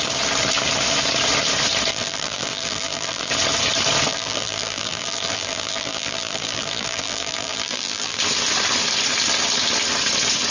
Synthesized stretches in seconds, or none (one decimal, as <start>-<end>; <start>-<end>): 1.9-3.3; 4.1-8.2